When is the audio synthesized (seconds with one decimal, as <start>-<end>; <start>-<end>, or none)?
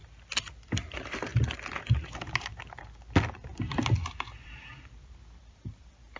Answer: 0.5-1.3; 4.3-6.2